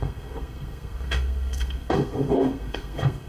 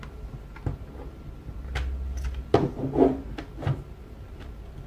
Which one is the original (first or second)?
second